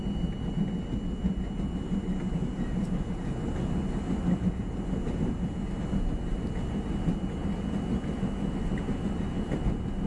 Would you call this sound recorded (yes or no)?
yes